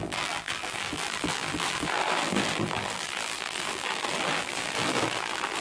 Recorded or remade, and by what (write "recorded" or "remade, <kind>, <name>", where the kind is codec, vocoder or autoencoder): remade, vocoder, BigVGAN v2